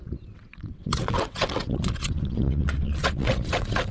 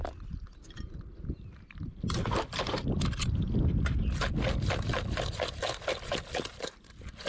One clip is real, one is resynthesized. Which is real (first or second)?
second